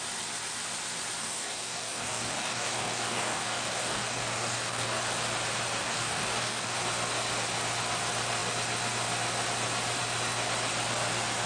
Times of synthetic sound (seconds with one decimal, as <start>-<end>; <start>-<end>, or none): 1.2-5.0; 5.8-6.8